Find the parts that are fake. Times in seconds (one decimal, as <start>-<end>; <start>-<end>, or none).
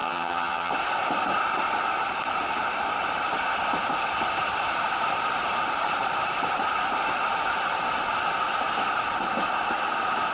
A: 0.0-0.7